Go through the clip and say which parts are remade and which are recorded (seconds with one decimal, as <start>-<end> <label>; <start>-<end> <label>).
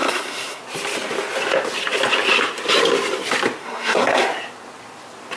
0.0-0.6 remade; 0.6-3.6 recorded; 3.6-4.3 remade; 4.3-5.4 recorded